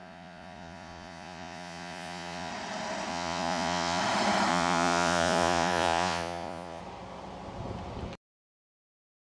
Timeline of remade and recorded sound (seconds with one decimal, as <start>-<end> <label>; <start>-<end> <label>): 0.0-2.5 remade; 2.5-3.1 recorded; 3.1-4.0 remade; 4.0-4.5 recorded; 4.5-6.8 remade; 6.8-9.3 recorded